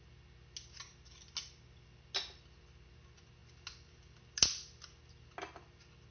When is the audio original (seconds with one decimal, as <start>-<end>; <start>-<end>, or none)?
0.0-6.1